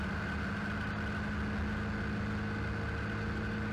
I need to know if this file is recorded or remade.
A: recorded